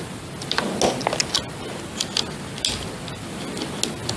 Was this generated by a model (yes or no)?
no